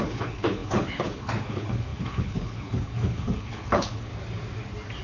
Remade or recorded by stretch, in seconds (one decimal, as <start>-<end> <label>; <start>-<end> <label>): 0.0-4.1 remade; 4.1-5.0 recorded